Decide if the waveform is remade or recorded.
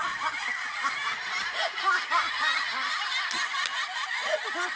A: recorded